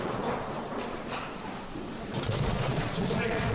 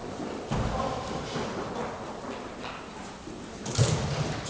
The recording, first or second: second